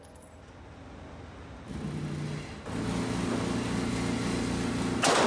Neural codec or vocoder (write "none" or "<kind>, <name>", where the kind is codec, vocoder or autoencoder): none